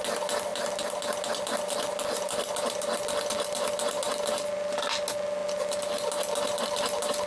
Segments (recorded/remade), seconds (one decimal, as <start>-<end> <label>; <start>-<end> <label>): 0.0-7.3 recorded